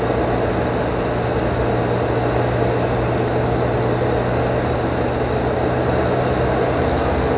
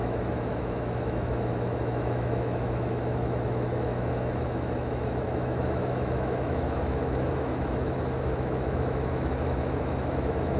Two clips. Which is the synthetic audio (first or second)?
second